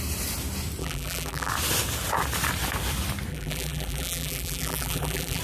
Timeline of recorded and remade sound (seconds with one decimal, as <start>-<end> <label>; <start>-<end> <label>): 0.0-0.8 recorded; 0.8-1.5 remade; 1.5-3.3 recorded; 3.3-5.4 remade